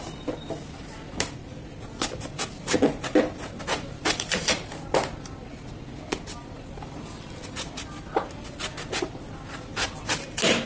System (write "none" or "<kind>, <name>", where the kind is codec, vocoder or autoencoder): none